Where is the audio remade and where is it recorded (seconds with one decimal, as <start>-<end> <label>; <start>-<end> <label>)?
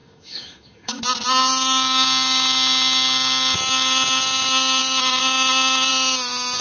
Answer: 0.0-1.0 remade; 1.0-6.6 recorded